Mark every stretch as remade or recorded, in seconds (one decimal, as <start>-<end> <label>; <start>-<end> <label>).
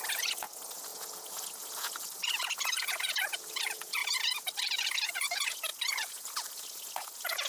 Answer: 0.0-7.5 remade